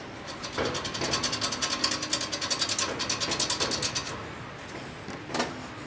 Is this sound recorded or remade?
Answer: recorded